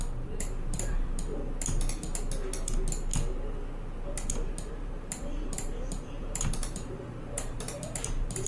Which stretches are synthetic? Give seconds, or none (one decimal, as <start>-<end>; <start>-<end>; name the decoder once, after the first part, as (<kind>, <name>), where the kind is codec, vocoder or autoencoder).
0.0-1.3 (vocoder, BigVGAN v2); 4.7-8.5